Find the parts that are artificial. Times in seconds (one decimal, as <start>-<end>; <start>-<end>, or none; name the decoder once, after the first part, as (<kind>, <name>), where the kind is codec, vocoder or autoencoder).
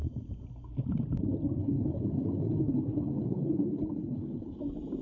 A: 1.6-4.6 (codec, HILCodec)